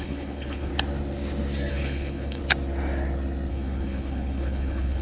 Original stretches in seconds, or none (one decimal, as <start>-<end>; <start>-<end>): 0.7-1.7; 2.4-3.5